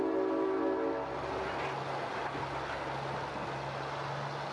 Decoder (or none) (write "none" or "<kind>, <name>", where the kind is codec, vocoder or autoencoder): none